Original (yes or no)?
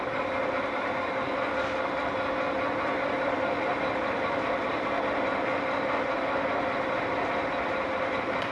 yes